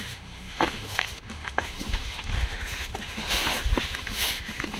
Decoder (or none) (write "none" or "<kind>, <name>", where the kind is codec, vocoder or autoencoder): autoencoder, DAC-VAE